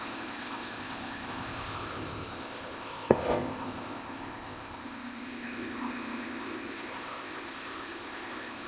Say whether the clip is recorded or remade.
remade